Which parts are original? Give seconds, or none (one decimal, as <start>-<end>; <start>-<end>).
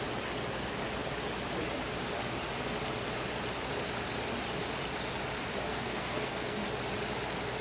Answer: 0.0-5.7; 6.6-7.6